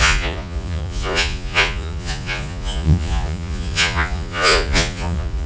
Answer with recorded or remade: remade